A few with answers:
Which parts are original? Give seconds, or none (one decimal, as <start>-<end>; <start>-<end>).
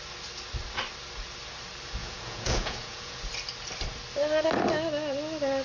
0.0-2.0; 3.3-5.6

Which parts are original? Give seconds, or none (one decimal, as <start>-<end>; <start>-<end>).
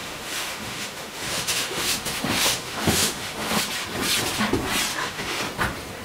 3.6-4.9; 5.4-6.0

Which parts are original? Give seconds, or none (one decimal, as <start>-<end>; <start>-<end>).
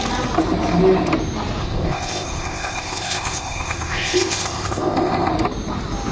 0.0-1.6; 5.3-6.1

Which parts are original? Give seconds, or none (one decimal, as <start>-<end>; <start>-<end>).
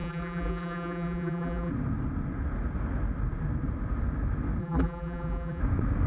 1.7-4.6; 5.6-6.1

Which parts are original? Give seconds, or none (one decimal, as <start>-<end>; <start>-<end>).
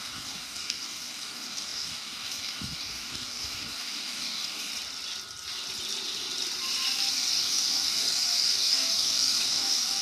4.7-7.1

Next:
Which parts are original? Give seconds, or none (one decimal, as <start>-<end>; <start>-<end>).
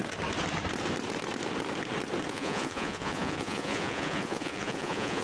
0.0-2.3